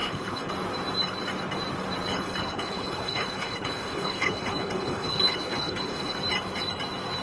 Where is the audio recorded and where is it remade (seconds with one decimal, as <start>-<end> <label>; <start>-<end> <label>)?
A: 0.0-0.5 remade; 0.5-2.1 recorded; 2.1-6.2 remade; 6.2-7.2 recorded